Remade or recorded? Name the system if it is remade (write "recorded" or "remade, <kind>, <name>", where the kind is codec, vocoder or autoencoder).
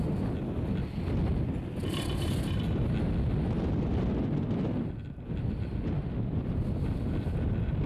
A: recorded